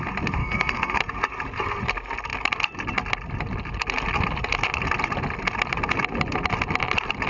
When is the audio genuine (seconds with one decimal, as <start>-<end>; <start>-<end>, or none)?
0.0-0.4; 1.0-7.3